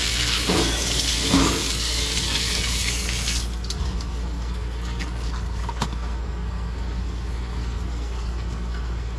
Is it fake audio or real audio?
fake